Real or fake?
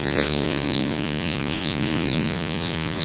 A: fake